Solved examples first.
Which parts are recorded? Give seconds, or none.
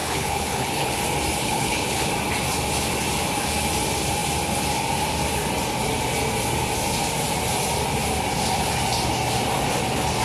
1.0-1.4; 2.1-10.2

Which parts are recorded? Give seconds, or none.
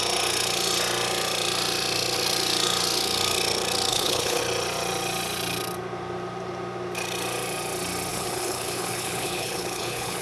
0.0-3.9; 4.4-8.1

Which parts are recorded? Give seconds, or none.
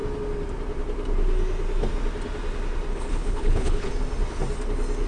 0.0-2.9; 3.9-5.1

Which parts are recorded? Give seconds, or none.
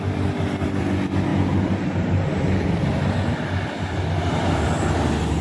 0.0-5.4